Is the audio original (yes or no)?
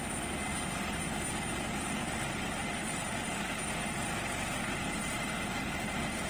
yes